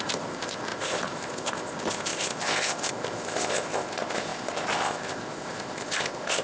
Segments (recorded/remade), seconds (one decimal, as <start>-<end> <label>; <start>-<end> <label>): 0.0-6.4 remade